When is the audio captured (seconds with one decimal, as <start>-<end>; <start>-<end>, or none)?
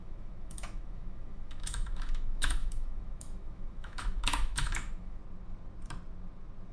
5.2-6.7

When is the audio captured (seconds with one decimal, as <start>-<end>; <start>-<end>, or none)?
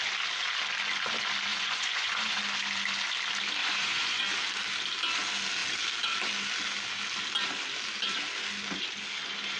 0.0-1.5; 2.4-3.6; 4.2-9.6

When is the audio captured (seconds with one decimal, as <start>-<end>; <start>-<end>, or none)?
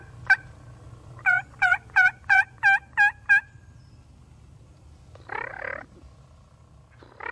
0.0-1.3; 2.6-7.3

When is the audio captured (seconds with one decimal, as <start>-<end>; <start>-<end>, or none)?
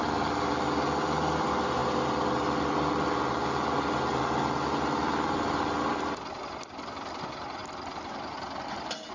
0.0-9.1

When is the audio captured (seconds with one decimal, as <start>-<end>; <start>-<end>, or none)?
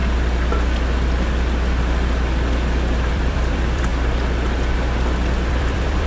0.0-3.1; 3.9-5.5